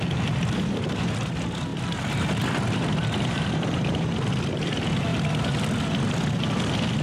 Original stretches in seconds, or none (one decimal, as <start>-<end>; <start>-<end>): 0.0-1.7; 4.0-5.1; 5.9-7.0

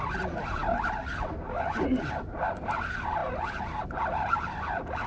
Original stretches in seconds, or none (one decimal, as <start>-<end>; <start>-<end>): 0.0-5.1

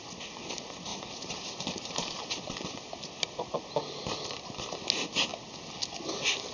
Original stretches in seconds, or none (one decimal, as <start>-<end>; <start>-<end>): 0.0-0.9; 3.4-6.5